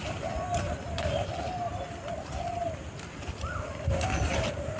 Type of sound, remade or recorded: recorded